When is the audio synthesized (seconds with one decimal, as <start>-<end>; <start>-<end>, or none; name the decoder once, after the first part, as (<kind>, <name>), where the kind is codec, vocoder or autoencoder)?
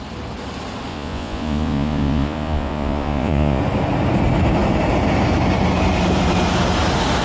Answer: 0.9-3.6 (vocoder, Vocos)